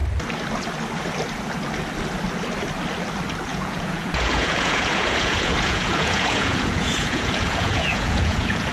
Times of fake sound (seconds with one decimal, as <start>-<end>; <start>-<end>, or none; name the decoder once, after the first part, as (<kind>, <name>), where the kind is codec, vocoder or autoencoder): 3.5-8.7 (vocoder, Vocos)